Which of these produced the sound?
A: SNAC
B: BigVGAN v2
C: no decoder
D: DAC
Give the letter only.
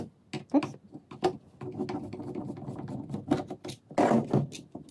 C